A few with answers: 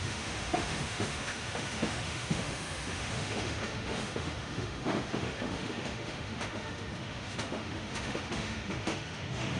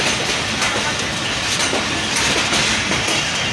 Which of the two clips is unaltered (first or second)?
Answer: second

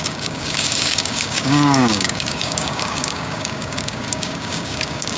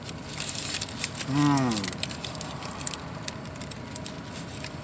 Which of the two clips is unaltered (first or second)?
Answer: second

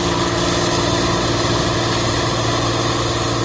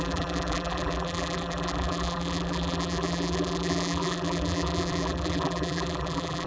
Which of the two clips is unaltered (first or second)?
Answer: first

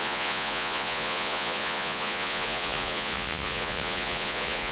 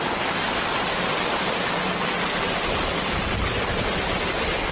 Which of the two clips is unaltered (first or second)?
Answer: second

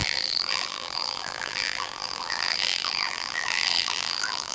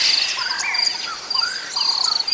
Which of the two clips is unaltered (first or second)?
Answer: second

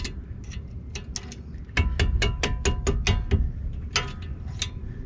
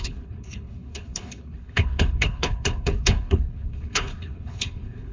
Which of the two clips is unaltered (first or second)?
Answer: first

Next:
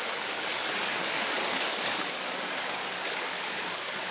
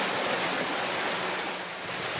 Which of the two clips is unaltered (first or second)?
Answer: second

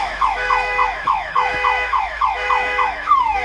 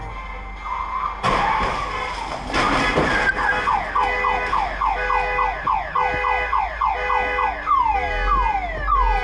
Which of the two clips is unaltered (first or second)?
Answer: second